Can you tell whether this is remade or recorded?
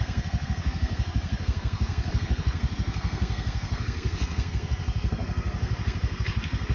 remade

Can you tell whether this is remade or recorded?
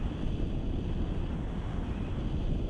recorded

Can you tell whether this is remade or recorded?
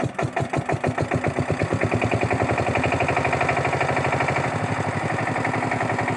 recorded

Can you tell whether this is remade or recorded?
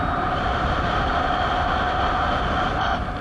recorded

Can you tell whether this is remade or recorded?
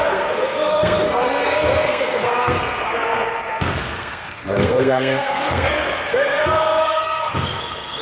remade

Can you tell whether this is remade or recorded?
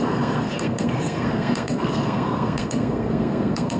remade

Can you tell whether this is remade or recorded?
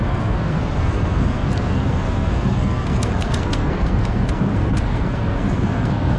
remade